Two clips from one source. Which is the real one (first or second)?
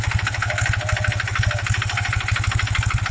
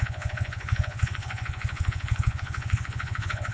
first